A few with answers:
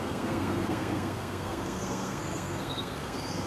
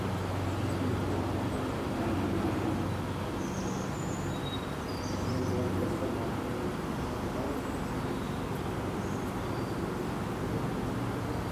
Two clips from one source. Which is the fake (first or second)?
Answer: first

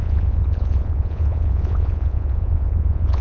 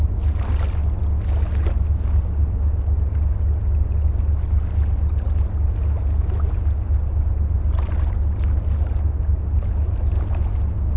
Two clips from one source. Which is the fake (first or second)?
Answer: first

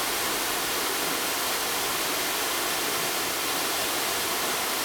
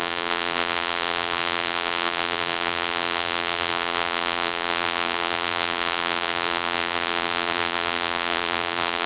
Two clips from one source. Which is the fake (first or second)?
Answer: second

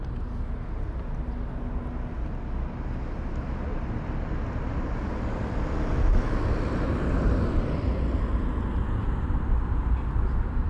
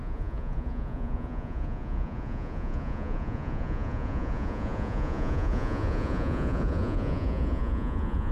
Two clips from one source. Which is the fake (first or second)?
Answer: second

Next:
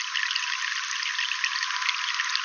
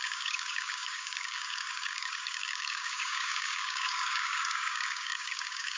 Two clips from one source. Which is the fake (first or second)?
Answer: second